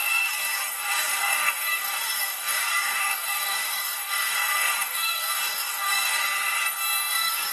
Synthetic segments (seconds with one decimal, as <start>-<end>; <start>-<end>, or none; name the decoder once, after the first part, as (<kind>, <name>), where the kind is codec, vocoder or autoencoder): 0.0-6.2 (codec, DAC); 7.1-7.5